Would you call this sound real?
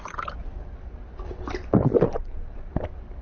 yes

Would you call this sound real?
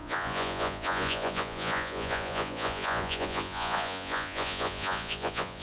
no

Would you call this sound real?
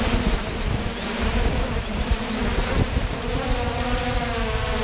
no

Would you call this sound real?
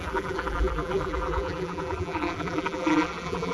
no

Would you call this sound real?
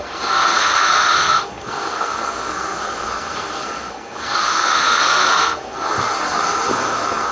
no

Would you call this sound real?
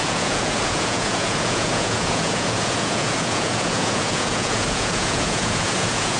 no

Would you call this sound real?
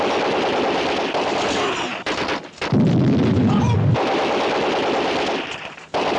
yes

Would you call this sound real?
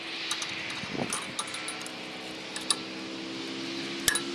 yes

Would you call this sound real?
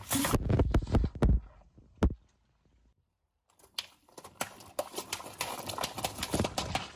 yes